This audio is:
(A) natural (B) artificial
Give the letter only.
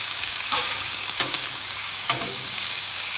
B